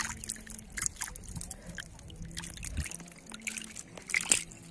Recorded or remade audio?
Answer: recorded